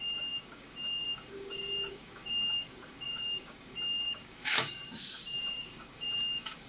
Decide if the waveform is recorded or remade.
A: remade